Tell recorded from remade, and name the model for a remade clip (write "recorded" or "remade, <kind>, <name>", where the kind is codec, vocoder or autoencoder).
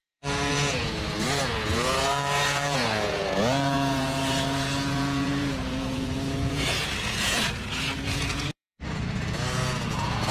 remade, vocoder, Vocos